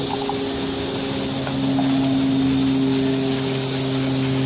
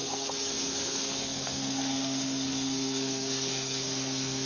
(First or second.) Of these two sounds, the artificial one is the second